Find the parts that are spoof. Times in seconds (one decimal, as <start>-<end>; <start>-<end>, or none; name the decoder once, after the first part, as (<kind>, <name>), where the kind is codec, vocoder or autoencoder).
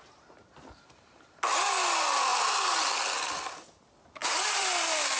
4.2-5.2 (vocoder, BigVGAN v2)